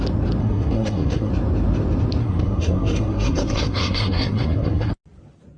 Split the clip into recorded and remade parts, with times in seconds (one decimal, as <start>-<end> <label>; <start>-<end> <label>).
0.0-0.4 recorded; 0.4-1.3 remade; 1.3-2.2 recorded; 2.2-4.9 remade; 4.9-5.6 recorded